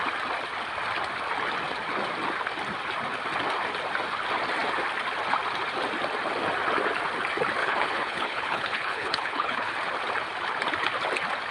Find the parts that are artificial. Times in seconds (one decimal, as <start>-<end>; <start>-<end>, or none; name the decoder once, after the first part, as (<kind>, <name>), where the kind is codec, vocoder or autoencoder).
7.6-9.7 (codec, HILCodec)